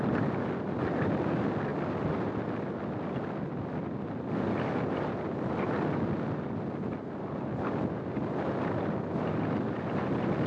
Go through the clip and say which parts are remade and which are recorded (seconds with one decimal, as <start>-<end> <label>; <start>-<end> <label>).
0.0-10.5 recorded